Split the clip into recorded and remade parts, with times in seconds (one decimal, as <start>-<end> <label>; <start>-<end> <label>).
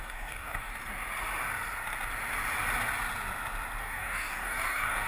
0.0-0.7 remade; 0.7-3.8 recorded; 3.8-5.1 remade